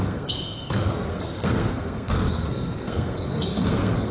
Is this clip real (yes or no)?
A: no